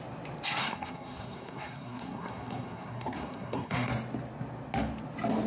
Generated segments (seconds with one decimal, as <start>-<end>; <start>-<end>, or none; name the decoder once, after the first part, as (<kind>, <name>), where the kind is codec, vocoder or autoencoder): 0.6-3.9 (codec, SNAC)